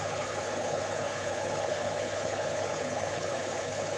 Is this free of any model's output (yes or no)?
no